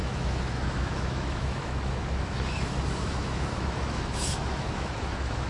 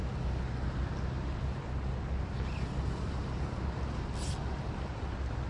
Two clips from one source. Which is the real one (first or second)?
second